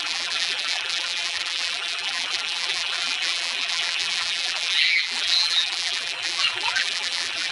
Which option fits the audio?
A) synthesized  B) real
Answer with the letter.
A